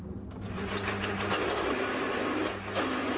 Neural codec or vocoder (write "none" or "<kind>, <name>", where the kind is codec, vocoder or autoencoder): none